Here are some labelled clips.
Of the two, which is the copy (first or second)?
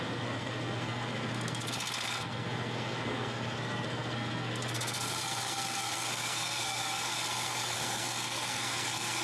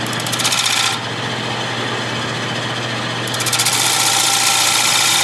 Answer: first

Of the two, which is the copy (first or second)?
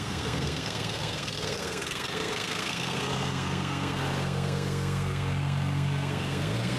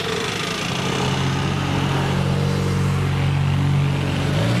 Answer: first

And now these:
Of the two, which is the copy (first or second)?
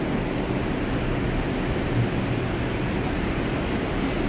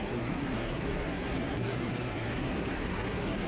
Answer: second